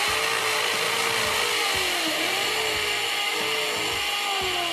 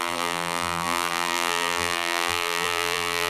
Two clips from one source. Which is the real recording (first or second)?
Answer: first